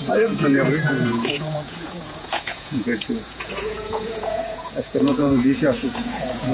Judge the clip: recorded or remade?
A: remade